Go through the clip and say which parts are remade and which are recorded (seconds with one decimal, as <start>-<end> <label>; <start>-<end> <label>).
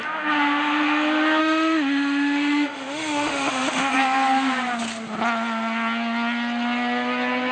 0.0-1.4 recorded; 1.4-3.9 remade; 3.9-7.5 recorded